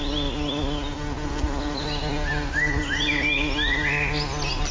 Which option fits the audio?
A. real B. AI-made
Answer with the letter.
A